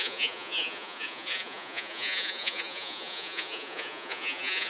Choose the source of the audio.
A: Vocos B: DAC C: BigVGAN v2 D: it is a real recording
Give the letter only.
A